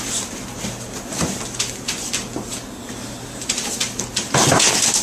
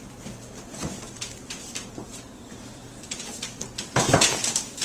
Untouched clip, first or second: first